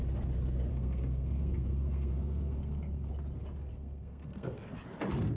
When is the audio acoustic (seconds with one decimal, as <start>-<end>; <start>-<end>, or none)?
0.0-0.7; 3.1-3.7; 4.5-5.4